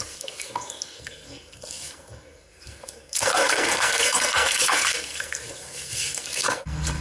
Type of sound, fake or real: fake